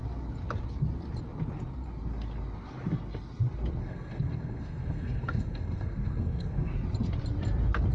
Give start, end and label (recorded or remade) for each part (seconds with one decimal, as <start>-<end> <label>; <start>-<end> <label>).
0.0-3.8 recorded; 3.8-6.7 remade; 6.7-7.9 recorded